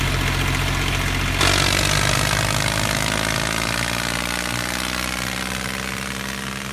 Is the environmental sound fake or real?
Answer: real